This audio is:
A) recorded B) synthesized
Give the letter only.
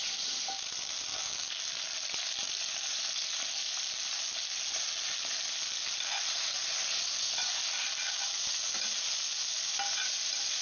A